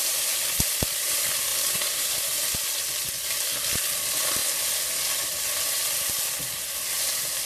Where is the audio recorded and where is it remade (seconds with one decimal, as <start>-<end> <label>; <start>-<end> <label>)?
0.0-7.5 recorded